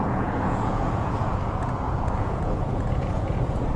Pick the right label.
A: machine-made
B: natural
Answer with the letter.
A